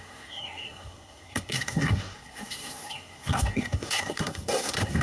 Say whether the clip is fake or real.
fake